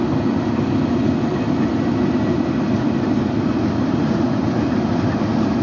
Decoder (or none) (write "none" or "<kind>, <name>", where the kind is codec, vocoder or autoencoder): none